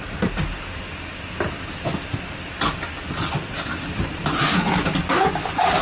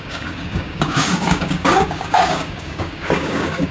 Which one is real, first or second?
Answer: first